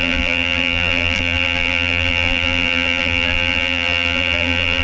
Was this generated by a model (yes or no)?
yes